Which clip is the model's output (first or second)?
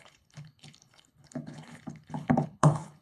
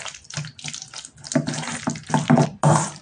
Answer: first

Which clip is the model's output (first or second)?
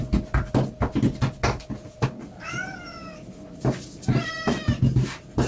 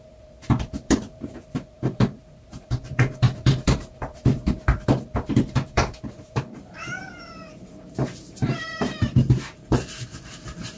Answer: second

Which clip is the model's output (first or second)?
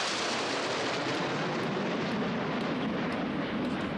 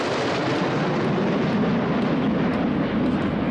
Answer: first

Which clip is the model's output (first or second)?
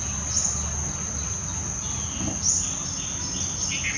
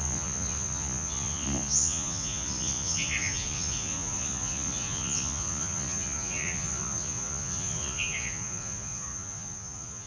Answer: second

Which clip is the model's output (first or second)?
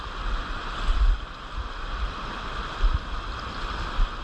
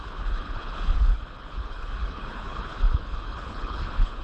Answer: second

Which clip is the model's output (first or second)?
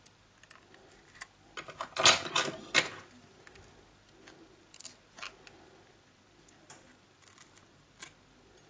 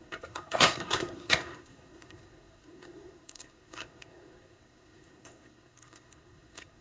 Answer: second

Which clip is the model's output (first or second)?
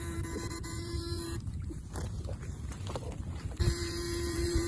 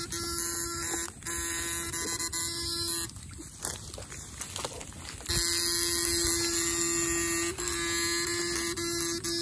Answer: first